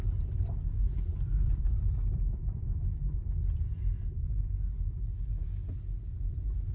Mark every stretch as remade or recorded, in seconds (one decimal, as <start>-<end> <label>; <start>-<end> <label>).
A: 0.0-1.1 recorded; 1.1-2.7 remade; 2.7-6.1 recorded; 6.1-6.7 remade